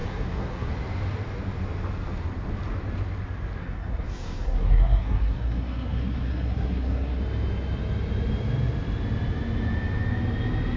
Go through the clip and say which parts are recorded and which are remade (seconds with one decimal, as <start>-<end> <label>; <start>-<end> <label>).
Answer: 0.0-0.7 remade; 0.7-3.6 recorded; 3.6-7.2 remade; 7.2-10.8 recorded